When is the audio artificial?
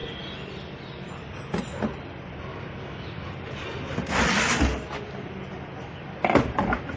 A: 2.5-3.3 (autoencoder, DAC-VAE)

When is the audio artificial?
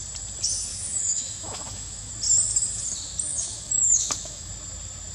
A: 0.7-2.1 (autoencoder, DAC-VAE); 3.3-4.5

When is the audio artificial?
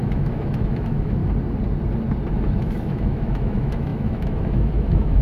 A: 0.0-1.2 (autoencoder, DAC-VAE); 2.3-5.2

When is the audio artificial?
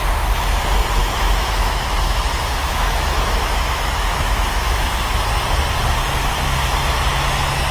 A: 1.0-5.2 (autoencoder, DAC-VAE)